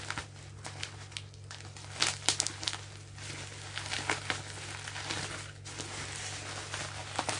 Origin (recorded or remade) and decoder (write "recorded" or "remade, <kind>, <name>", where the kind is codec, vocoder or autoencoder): recorded